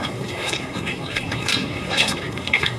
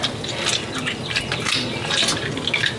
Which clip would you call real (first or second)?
second